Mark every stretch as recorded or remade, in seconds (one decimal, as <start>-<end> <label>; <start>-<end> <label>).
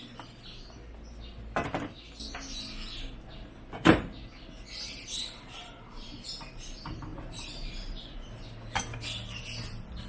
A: 0.0-10.1 recorded